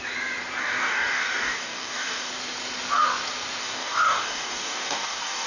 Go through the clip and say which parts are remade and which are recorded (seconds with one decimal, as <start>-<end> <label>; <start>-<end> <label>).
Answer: 0.0-0.6 recorded; 0.6-2.3 remade; 2.3-3.6 recorded; 3.6-5.5 remade